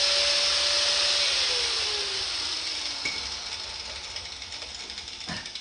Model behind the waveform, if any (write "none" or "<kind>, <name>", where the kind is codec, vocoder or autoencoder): none